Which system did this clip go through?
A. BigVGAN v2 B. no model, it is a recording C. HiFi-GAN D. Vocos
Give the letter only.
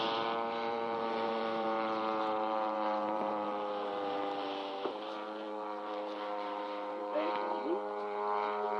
A